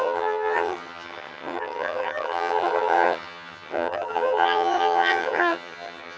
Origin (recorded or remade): remade